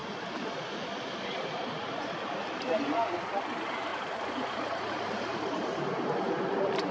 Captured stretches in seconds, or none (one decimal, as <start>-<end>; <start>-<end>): 2.7-3.9; 5.8-6.9